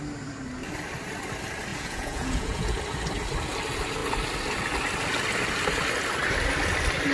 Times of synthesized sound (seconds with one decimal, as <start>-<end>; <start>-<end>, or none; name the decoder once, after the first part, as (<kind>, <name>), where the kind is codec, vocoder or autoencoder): 1.7-2.8 (vocoder, Vocos)